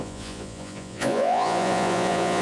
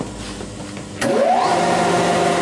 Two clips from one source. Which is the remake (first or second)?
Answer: first